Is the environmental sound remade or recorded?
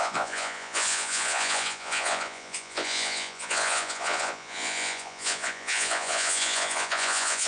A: remade